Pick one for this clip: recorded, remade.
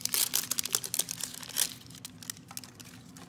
recorded